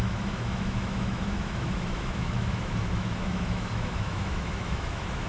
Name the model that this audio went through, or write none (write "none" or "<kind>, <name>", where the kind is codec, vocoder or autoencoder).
autoencoder, DAC-VAE